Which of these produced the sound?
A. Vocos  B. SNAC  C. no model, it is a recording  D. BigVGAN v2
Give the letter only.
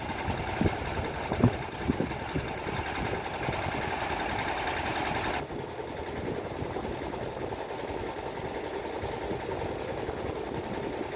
C